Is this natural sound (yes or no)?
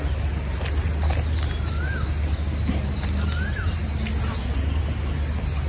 yes